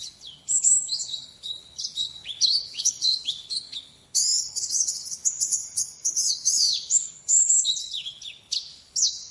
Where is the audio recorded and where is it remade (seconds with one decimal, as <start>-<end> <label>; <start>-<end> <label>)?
0.0-9.3 remade